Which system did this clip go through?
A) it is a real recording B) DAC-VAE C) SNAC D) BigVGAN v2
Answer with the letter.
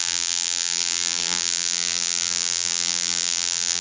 D